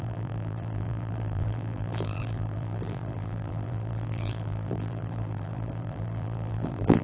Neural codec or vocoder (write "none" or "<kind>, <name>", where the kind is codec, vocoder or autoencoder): vocoder, BigVGAN v2